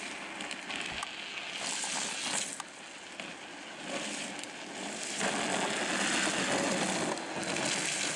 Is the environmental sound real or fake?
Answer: real